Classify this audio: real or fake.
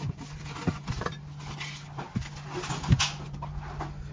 real